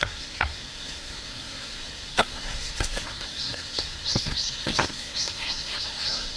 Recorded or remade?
remade